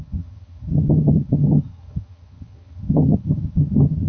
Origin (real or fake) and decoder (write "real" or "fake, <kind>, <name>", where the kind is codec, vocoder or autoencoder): fake, vocoder, HiFi-GAN